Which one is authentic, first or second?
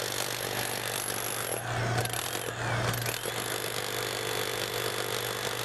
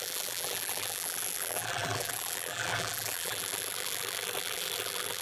first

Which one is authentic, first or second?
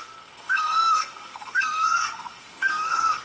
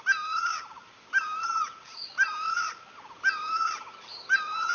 second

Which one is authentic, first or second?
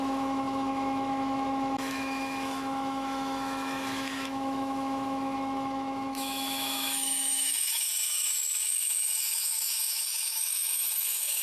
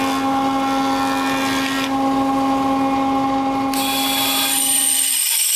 second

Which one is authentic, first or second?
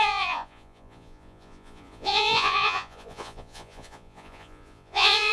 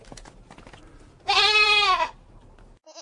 second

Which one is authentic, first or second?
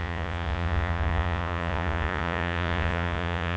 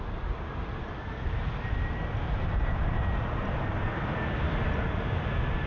second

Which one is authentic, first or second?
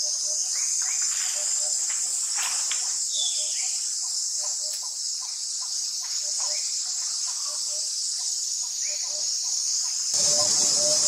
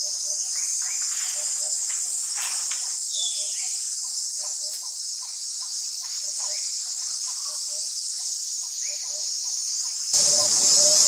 first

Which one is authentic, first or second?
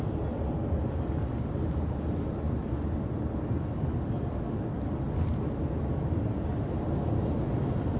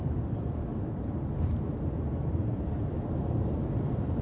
first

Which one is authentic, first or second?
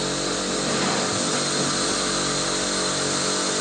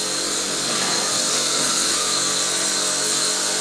first